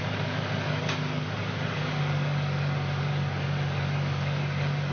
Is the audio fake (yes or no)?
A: yes